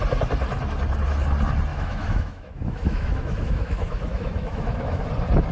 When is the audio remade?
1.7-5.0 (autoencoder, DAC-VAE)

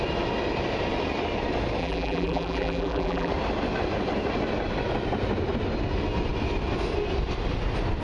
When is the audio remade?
1.8-3.3 (vocoder, BigVGAN v2)

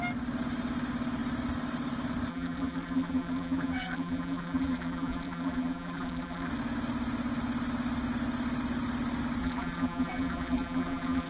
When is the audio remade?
2.3-6.5 (vocoder, BigVGAN v2); 9.4-11.3

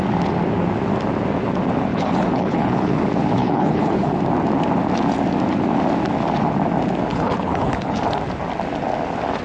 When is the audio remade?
1.9-3.0 (codec, HILCodec); 3.4-4.2; 7.1-8.0